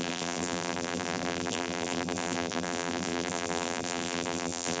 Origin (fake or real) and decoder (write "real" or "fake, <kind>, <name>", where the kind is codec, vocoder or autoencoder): fake, vocoder, BigVGAN v2